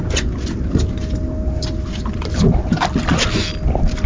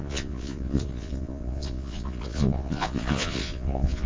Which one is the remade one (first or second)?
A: second